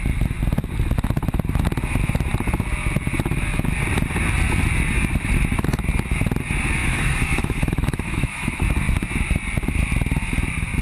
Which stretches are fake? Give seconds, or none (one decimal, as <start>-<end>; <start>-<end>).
6.8-8.6